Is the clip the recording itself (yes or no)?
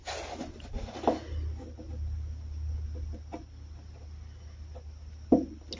yes